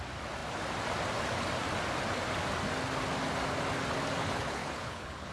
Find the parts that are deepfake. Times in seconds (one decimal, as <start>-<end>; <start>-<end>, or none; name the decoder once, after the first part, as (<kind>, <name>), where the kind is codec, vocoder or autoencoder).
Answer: 4.2-5.3 (codec, HILCodec)